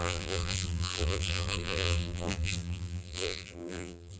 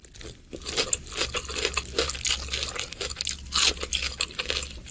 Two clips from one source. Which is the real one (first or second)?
second